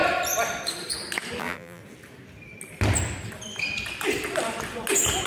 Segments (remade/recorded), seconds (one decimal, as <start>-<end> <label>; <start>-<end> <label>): 0.0-1.4 recorded; 1.4-1.8 remade; 1.8-5.3 recorded